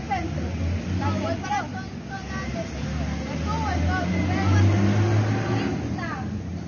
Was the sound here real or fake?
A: real